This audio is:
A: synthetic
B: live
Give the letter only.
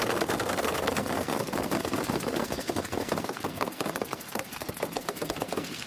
A